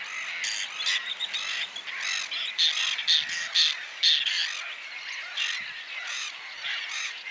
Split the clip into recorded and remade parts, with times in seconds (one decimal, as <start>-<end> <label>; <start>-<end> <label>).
0.0-6.1 recorded; 6.1-7.3 remade